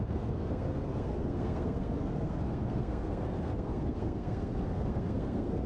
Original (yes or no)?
no